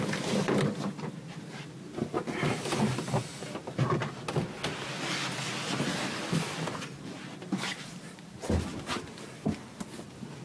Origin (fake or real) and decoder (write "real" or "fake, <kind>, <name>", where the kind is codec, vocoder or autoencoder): real